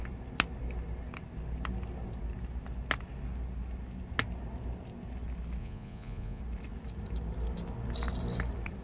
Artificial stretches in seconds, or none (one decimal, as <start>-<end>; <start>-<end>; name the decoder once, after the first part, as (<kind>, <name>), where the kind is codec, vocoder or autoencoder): 5.6-6.4 (vocoder, Vocos)